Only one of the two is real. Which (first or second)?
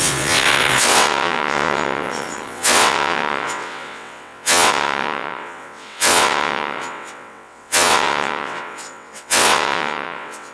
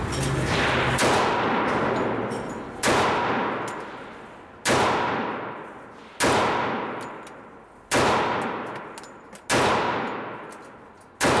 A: second